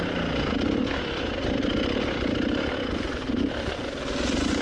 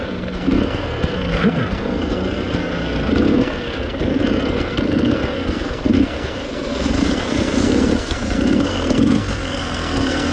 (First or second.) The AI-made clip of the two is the second